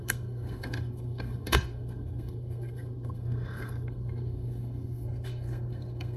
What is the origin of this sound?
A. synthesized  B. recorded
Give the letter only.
A